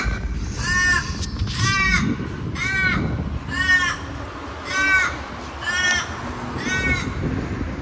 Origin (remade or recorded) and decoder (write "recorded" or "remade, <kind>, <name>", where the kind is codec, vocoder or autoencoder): recorded